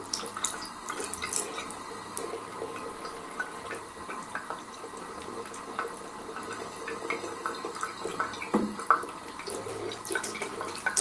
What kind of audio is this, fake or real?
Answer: fake